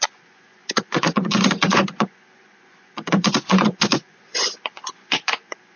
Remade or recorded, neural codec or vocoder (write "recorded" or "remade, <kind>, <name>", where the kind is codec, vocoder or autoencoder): remade, vocoder, Vocos